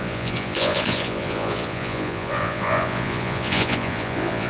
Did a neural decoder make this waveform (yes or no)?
yes